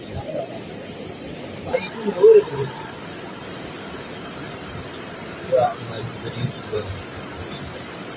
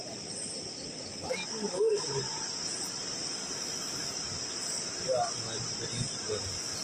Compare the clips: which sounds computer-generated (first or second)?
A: first